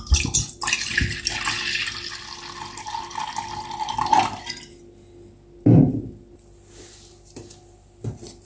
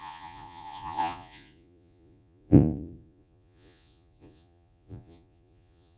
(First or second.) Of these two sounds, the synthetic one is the second